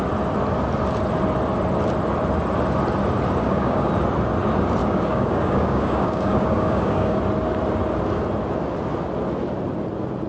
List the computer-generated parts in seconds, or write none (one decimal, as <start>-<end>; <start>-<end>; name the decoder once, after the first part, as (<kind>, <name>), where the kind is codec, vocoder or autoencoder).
3.4-3.9 (codec, DAC); 4.8-7.2